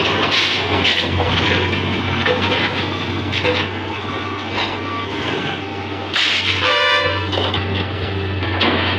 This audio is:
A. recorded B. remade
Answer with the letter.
B